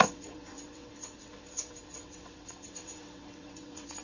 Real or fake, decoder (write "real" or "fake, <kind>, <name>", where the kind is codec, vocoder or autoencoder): fake, vocoder, WaveNeXt